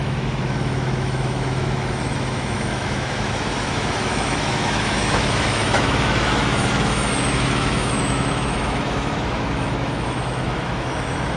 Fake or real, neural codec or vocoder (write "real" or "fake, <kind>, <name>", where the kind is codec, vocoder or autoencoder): fake, autoencoder, DAC-VAE